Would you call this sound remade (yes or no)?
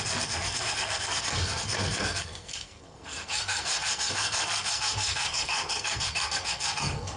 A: yes